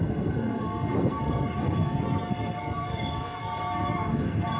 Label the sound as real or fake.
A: fake